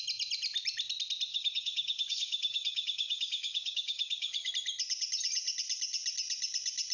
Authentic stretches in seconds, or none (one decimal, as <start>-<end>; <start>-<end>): 0.0-1.3; 4.5-6.9